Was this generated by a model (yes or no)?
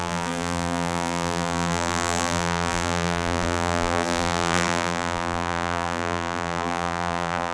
yes